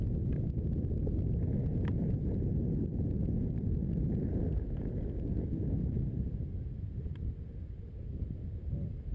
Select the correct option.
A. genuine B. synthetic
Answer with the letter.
A